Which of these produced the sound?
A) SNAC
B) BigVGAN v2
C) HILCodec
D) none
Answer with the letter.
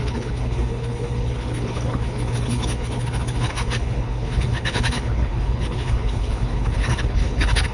C